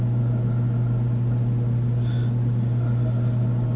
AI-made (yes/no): no